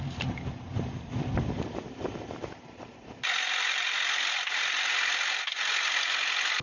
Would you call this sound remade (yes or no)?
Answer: yes